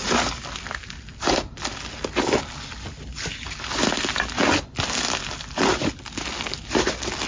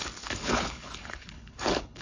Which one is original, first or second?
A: first